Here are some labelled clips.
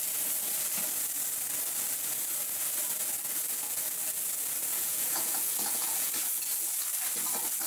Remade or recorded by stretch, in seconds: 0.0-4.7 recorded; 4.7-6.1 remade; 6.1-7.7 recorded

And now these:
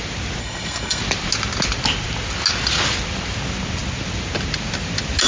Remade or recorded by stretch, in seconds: 0.0-0.4 recorded; 0.4-1.0 remade; 1.0-5.3 recorded